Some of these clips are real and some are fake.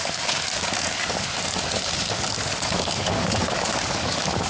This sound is fake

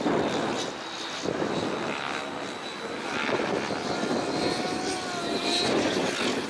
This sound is real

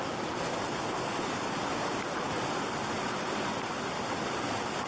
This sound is real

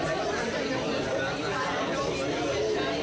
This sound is real